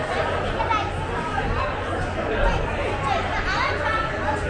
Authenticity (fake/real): real